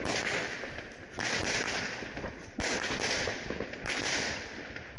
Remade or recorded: recorded